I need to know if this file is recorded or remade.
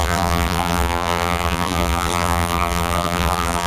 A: remade